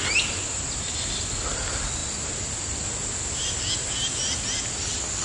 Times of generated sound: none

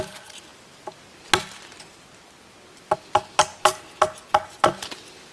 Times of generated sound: none